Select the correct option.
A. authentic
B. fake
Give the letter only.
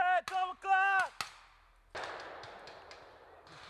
A